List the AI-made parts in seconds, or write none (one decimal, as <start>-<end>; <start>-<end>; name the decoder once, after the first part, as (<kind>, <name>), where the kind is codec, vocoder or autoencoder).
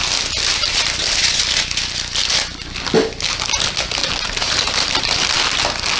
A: 0.6-1.4 (vocoder, BigVGAN v2); 4.0-5.4